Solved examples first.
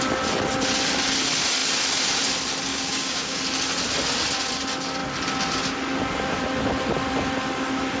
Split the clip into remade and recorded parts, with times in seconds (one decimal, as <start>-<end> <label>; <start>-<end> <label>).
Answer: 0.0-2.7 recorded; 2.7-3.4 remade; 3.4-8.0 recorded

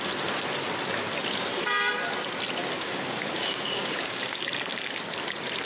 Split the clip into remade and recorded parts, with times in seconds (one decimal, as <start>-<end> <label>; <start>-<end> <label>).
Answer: 0.0-2.6 recorded; 2.6-4.2 remade; 4.2-5.7 recorded

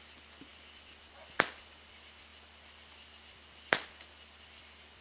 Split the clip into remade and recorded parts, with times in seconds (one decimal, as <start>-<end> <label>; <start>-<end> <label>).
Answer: 0.0-5.0 recorded

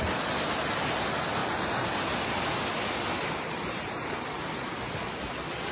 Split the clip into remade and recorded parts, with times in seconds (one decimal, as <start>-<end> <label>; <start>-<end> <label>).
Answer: 0.0-5.7 recorded

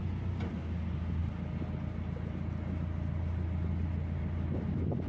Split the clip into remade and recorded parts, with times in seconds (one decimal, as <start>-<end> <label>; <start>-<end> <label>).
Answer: 0.0-5.1 recorded

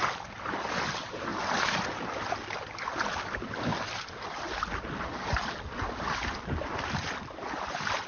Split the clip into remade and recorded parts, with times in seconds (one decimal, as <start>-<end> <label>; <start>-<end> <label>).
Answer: 0.0-8.1 recorded

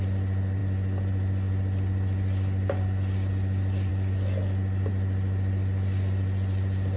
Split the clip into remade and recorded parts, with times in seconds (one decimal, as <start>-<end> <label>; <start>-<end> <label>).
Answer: 0.0-7.0 recorded